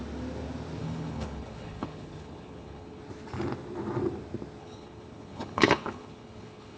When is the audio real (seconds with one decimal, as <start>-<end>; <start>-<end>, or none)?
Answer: 0.0-0.8; 3.0-4.6